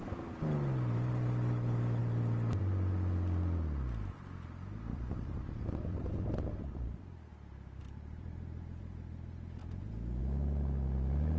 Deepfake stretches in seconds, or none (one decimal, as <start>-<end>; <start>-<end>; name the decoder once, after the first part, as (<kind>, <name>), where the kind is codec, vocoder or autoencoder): 2.0-2.6 (vocoder, BigVGAN v2); 4.9-7.0; 7.8-8.8; 9.6-10.2